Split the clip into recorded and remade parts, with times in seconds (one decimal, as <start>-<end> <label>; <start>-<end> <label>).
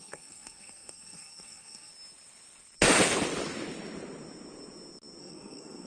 0.0-1.9 remade; 1.9-5.2 recorded; 5.2-5.9 remade